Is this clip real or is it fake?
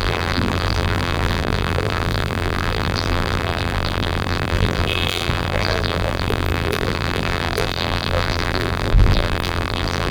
fake